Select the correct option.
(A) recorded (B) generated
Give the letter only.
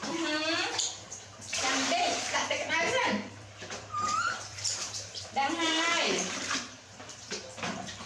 B